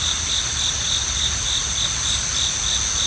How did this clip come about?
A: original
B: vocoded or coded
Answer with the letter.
A